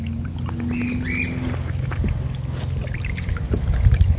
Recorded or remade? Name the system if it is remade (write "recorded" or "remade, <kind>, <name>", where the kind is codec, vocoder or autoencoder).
recorded